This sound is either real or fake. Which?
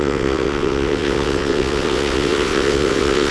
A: fake